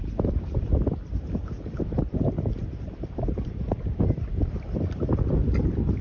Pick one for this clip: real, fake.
fake